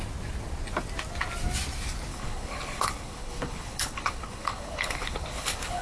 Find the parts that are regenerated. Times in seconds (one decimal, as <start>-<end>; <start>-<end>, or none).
2.1-5.8